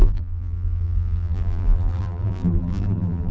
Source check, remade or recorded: remade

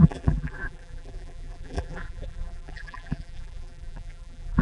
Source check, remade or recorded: remade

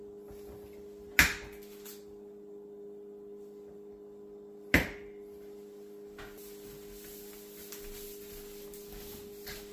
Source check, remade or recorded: recorded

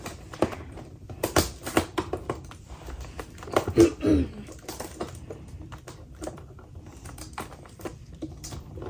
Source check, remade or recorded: remade